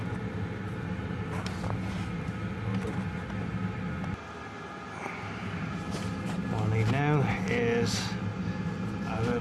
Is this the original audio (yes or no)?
yes